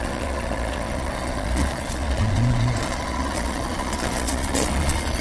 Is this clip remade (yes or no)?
yes